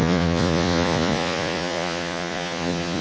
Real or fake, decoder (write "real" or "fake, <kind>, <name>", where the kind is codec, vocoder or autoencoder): fake, vocoder, Vocos